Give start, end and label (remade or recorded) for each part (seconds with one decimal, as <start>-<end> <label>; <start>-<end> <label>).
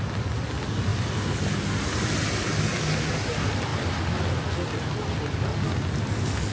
0.0-6.5 recorded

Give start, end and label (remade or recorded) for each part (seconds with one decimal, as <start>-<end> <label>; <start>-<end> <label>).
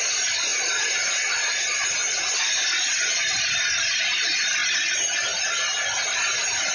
0.0-6.7 recorded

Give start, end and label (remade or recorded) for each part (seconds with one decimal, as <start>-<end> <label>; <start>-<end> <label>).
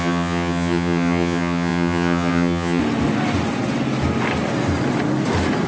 0.0-2.8 remade; 2.8-5.7 recorded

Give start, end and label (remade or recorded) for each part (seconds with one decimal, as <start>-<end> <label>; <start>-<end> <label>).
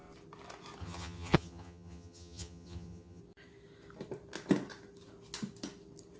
0.0-0.8 recorded; 0.8-3.2 remade; 3.2-6.2 recorded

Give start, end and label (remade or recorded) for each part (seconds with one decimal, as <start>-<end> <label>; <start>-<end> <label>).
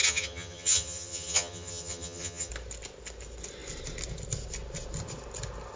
0.0-2.5 remade; 2.5-5.8 recorded